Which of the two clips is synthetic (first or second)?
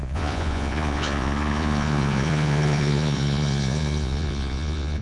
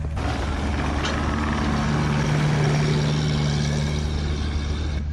first